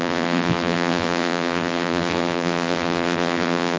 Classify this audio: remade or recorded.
remade